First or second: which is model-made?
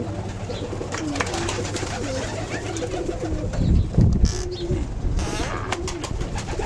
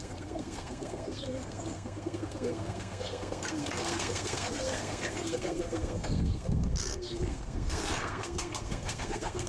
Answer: second